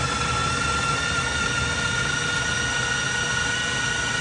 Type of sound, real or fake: real